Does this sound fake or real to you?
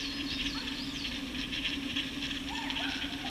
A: fake